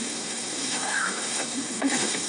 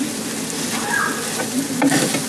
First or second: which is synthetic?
first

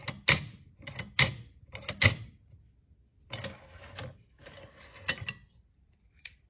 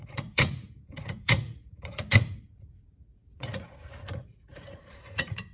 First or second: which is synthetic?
second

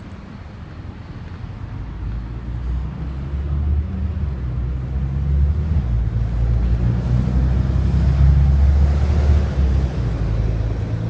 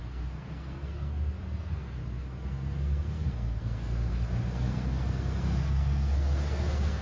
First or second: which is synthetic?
second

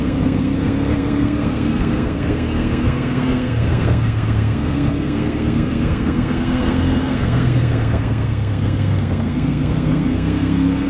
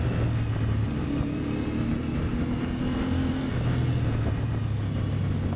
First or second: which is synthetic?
first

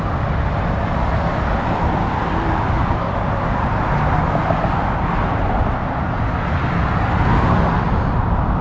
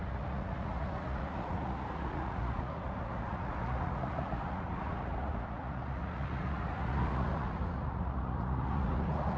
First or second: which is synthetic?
second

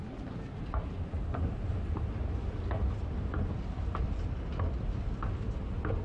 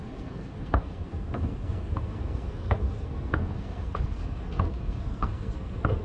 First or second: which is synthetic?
second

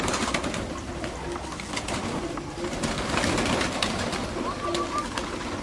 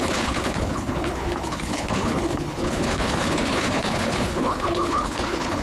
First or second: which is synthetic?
second